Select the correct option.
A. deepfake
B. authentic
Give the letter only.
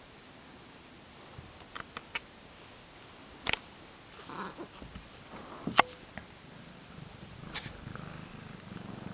B